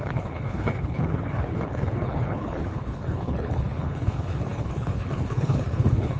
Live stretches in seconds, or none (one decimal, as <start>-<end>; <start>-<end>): none